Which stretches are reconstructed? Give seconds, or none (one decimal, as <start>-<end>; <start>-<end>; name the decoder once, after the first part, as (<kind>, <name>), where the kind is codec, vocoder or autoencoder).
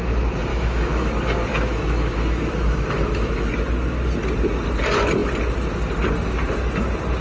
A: 0.5-1.1 (autoencoder, DAC-VAE); 1.5-3.5